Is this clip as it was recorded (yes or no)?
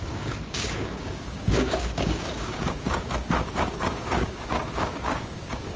no